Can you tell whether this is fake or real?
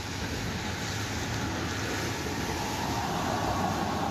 real